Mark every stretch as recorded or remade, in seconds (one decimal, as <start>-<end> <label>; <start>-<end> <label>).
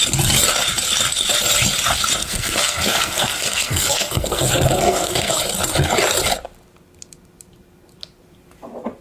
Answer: 0.0-2.2 recorded; 2.2-5.4 remade; 5.4-9.0 recorded